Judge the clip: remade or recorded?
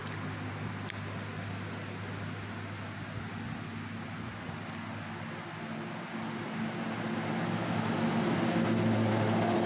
recorded